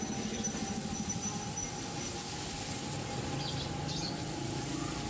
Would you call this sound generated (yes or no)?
no